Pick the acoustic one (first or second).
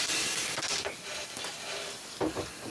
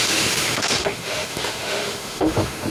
first